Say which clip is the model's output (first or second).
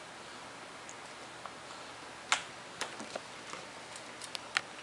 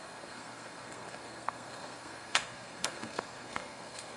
second